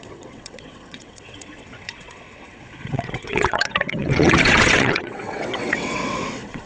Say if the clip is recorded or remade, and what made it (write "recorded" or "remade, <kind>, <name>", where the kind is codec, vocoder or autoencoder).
remade, vocoder, WaveNeXt